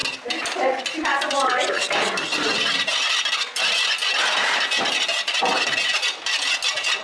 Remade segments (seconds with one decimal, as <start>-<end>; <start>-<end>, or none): none